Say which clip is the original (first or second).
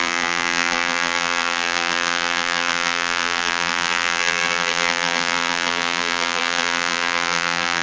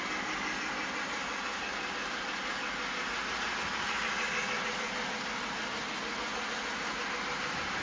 second